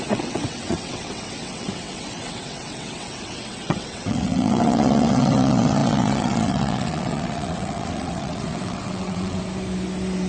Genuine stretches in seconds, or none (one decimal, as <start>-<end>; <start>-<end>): 9.4-10.3